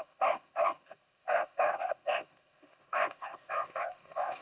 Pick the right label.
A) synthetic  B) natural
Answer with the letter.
A